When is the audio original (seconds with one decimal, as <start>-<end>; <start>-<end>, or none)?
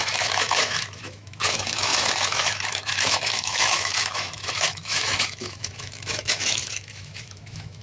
none